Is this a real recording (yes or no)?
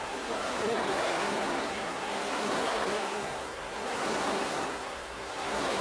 no